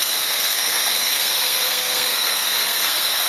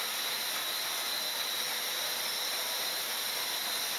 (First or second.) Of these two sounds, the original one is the second